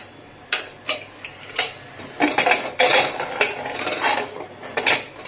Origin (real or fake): real